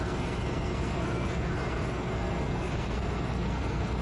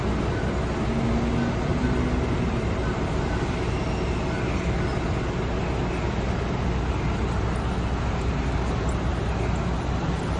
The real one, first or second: second